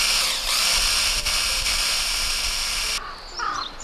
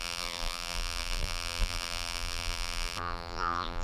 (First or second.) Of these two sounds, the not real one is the second